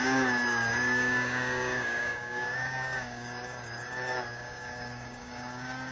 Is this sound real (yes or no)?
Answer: no